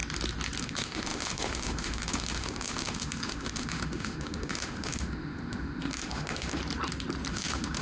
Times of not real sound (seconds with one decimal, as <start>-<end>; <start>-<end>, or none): 0.6-6.6; 7.3-7.8